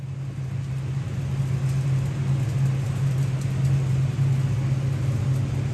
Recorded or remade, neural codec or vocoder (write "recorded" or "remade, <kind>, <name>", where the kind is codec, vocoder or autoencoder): recorded